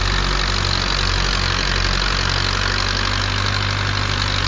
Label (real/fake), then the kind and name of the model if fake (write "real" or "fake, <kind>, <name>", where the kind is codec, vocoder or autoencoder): real